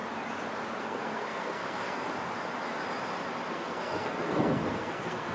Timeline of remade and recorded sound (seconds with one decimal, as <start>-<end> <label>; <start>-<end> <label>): 0.0-0.8 recorded; 0.8-2.0 remade; 2.0-3.5 recorded; 3.5-5.3 remade